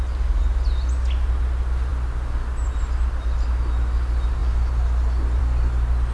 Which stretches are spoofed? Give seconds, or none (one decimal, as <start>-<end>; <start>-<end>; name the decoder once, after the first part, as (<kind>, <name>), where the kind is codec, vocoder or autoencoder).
none